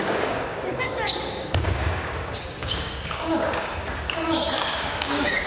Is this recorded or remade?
remade